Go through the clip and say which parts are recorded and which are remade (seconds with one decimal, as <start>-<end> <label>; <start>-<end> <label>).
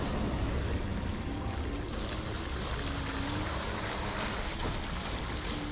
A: 0.0-5.7 recorded